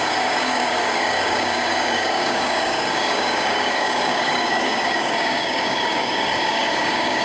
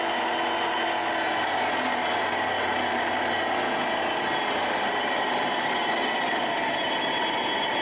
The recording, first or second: second